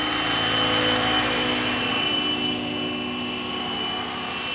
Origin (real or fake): real